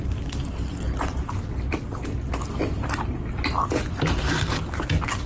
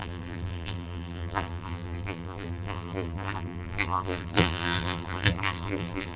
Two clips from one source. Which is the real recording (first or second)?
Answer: first